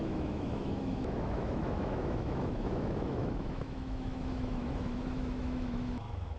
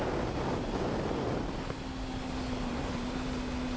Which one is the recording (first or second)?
second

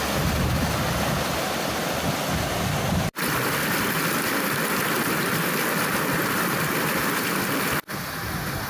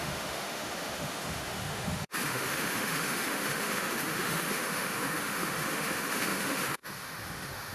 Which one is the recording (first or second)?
first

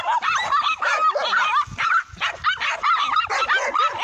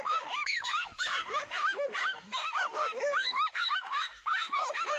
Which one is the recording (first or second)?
first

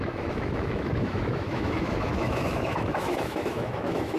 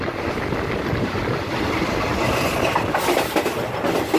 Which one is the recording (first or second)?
second